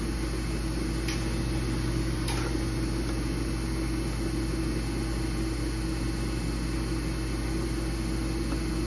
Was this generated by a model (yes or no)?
no